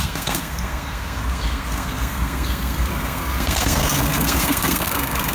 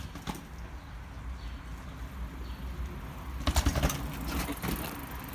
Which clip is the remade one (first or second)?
first